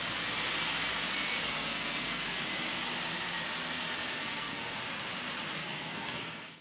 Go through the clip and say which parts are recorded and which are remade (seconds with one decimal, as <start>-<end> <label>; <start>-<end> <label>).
0.0-1.3 recorded; 1.3-2.4 remade; 2.4-4.2 recorded; 4.2-4.8 remade; 4.8-5.6 recorded; 5.6-6.6 remade